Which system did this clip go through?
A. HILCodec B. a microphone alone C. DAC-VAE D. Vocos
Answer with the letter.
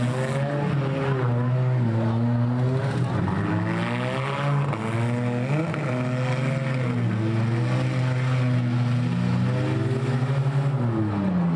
B